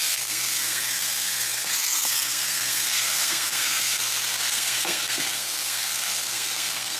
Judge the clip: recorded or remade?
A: remade